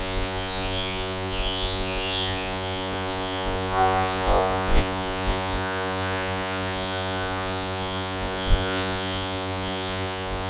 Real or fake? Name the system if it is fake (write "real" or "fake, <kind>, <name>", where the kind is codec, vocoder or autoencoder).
fake, vocoder, Vocos